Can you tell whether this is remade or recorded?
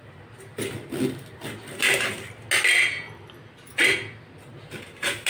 recorded